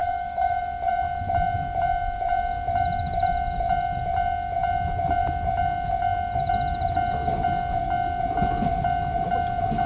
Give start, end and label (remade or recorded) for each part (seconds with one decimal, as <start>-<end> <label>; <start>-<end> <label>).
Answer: 0.0-0.6 remade; 0.6-9.9 recorded